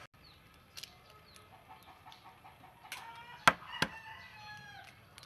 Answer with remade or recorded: recorded